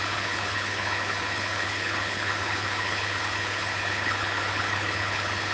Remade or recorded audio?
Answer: remade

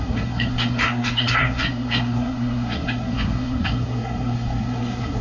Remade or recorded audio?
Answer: remade